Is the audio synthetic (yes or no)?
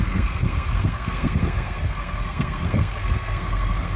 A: yes